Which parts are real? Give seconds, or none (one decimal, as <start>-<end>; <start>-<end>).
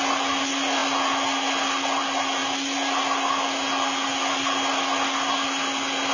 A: 0.0-6.1